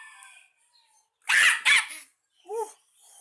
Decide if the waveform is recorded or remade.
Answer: recorded